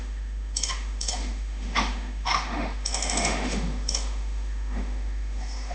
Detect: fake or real fake